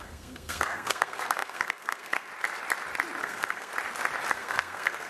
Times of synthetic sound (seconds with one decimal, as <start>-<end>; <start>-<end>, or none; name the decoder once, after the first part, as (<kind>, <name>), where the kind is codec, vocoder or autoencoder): 0.0-2.3 (codec, SNAC); 3.2-3.7; 4.3-5.1